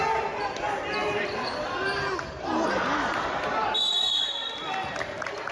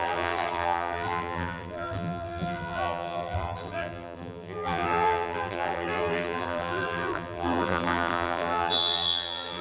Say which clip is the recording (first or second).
first